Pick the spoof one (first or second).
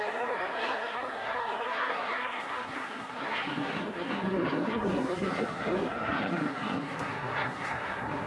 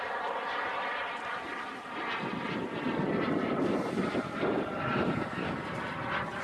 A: first